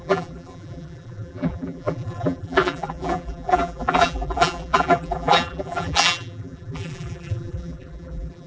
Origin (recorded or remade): remade